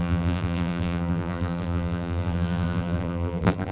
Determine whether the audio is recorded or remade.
remade